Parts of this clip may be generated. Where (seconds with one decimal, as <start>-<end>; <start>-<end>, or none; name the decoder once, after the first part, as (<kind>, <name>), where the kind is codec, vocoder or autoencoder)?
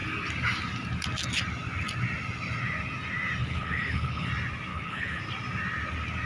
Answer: 3.4-4.3 (codec, HILCodec); 4.7-5.2